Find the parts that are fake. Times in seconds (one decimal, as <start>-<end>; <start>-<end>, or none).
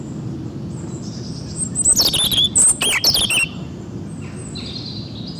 none